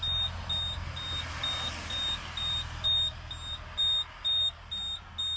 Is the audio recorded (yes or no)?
yes